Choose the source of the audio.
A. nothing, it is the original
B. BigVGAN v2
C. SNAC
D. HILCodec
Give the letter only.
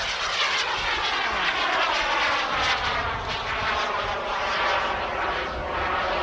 A